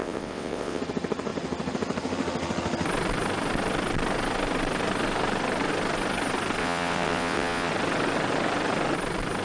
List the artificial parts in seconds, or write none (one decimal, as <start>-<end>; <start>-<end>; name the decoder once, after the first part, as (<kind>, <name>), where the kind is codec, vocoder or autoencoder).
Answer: 0.0-0.8 (vocoder, WaveNeXt); 6.6-7.7